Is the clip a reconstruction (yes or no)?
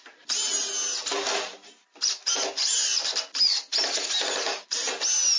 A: no